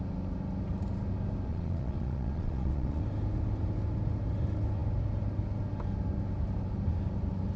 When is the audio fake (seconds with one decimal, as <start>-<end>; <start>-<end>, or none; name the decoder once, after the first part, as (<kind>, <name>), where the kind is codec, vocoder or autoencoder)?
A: 1.5-3.0 (vocoder, Vocos)